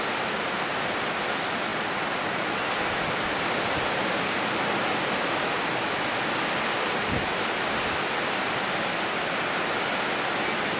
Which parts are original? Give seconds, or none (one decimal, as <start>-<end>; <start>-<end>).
0.0-10.8